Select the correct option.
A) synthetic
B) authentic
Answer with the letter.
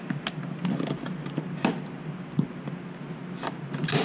B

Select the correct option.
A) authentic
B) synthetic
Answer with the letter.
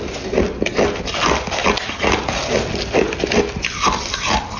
A